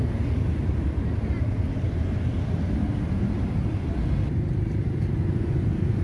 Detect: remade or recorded recorded